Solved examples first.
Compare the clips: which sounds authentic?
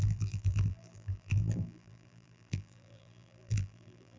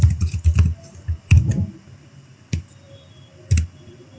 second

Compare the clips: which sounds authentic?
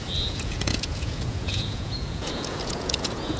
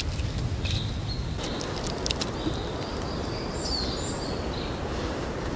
second